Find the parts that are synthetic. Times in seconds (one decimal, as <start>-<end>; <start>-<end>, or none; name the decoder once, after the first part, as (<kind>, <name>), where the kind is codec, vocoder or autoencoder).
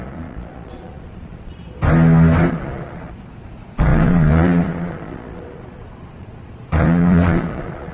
0.0-1.5 (vocoder, Vocos); 2.5-7.9